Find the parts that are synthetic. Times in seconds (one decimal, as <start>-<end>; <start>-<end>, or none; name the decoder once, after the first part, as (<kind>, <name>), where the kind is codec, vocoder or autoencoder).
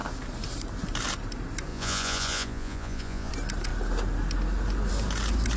1.7-3.3 (vocoder, Vocos)